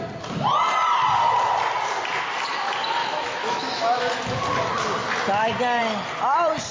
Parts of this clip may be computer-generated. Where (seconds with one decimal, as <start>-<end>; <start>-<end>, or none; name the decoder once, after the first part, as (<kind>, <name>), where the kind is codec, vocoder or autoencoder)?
3.0-4.0 (autoencoder, DAC-VAE)